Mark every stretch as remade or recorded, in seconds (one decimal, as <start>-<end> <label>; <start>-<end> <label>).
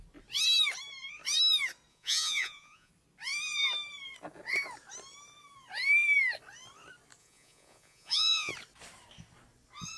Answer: 0.0-1.9 recorded; 1.9-2.9 remade; 2.9-7.2 recorded; 7.2-8.5 remade; 8.5-10.0 recorded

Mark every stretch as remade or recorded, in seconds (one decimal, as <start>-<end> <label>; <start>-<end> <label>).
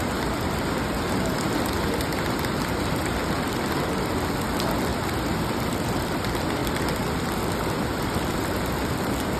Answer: 0.0-9.4 recorded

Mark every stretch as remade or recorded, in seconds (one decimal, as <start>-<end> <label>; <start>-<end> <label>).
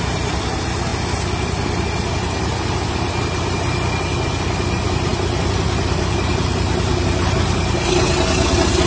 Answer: 0.0-8.9 recorded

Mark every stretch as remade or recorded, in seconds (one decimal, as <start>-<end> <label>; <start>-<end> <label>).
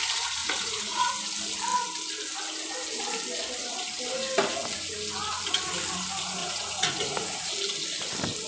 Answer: 0.0-0.4 recorded; 0.4-1.1 remade; 1.1-6.4 recorded; 6.4-7.5 remade; 7.5-8.5 recorded